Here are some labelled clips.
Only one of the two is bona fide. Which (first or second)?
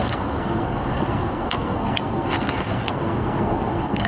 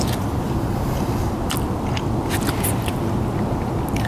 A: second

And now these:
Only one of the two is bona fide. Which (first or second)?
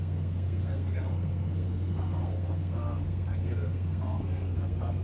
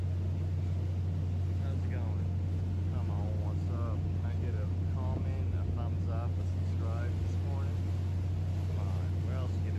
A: second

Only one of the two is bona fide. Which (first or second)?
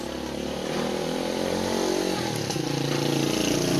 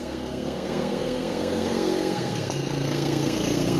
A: first